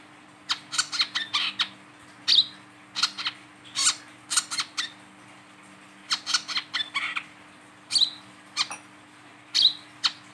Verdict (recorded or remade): recorded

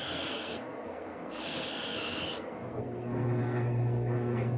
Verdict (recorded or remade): remade